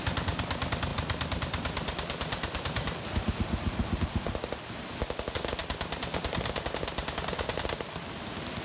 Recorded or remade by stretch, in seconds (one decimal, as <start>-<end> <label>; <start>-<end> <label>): 0.0-8.6 recorded